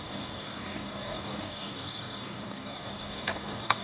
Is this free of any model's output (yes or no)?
no